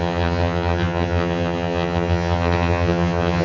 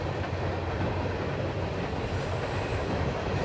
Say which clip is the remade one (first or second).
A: first